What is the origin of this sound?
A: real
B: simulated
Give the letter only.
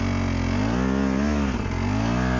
A